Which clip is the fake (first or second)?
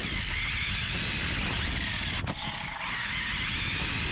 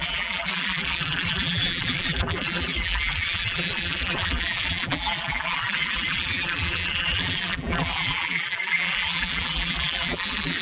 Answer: second